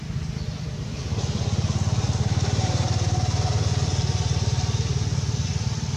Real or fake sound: real